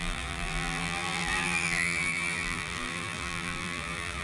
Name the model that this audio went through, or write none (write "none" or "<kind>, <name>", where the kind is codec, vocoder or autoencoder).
vocoder, BigVGAN v2